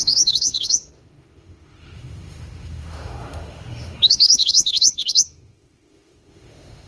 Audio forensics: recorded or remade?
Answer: remade